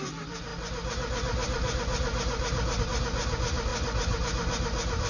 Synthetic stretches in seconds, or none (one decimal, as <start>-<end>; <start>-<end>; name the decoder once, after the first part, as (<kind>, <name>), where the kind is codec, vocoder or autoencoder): none